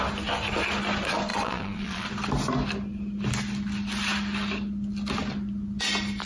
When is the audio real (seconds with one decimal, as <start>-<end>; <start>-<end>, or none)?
0.0-1.3; 2.1-6.3